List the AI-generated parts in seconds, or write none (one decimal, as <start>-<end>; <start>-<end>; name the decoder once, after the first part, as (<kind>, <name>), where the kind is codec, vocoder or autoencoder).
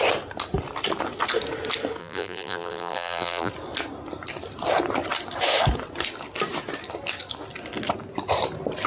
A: 2.0-3.5 (vocoder, BigVGAN v2)